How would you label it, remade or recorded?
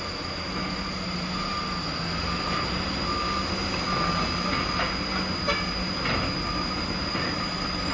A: recorded